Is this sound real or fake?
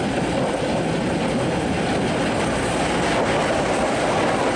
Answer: real